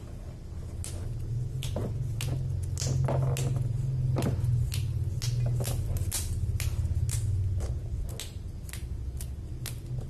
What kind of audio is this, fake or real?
real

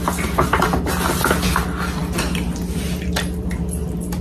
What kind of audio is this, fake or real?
real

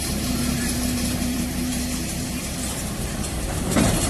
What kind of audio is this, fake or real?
fake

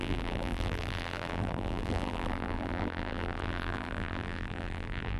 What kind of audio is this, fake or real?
fake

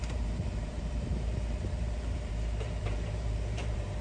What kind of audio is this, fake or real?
fake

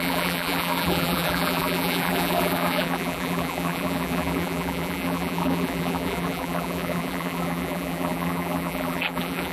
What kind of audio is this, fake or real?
fake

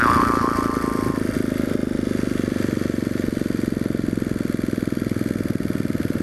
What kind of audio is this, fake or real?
real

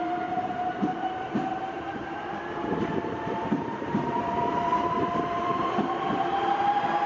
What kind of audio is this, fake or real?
fake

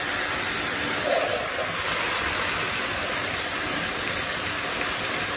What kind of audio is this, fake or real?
real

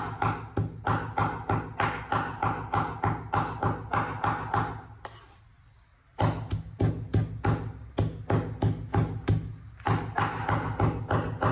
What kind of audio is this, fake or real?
real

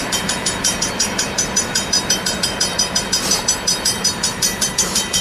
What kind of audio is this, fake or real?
fake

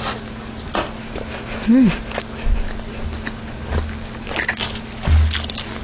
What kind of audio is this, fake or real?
real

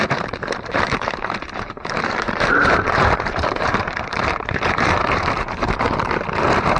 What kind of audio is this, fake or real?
fake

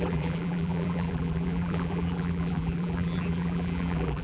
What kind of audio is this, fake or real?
fake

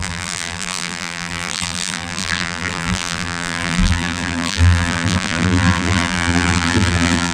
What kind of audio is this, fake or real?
fake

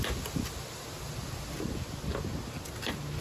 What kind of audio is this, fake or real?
real